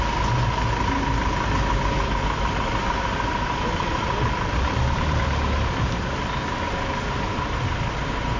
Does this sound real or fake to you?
real